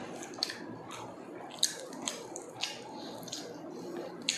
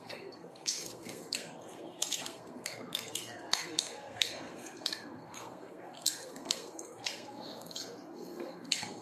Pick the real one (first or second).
first